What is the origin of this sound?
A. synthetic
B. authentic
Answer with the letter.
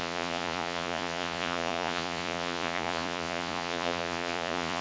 A